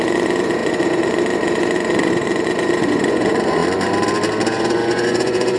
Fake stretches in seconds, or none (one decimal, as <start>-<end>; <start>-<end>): 0.0-3.6; 4.6-5.6